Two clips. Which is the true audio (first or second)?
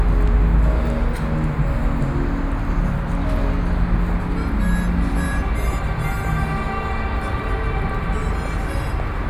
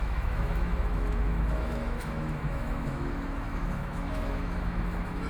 first